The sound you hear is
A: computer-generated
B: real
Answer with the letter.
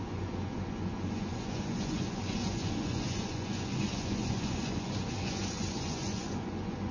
A